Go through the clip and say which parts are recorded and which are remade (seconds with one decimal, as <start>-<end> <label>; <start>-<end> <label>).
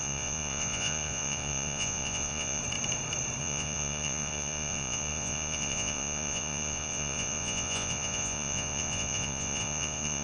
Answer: 0.0-2.6 remade; 2.6-3.4 recorded; 3.4-10.2 remade